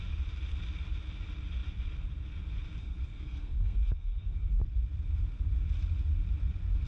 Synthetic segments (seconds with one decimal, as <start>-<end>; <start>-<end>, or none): 2.8-4.5